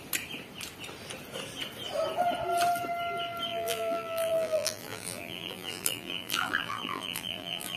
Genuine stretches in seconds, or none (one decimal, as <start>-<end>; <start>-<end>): 0.0-3.5